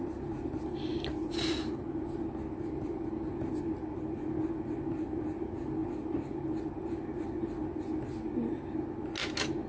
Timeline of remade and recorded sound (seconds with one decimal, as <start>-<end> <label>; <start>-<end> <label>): 0.0-9.7 recorded